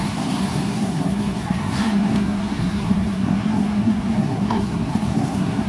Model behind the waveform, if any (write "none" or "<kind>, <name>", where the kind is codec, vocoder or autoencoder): codec, SNAC